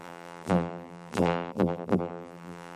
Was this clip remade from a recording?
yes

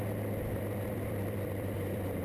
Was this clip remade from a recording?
yes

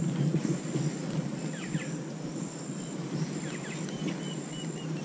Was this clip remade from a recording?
no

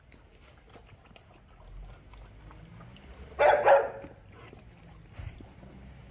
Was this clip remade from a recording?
no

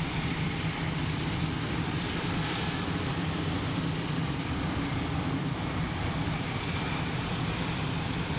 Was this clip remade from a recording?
yes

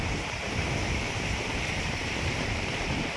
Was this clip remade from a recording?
yes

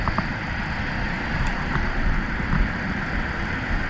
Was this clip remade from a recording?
no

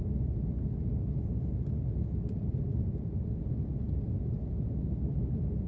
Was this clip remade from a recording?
no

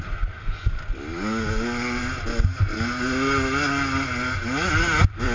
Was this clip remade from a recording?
no